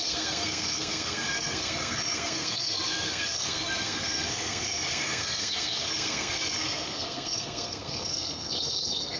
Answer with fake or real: fake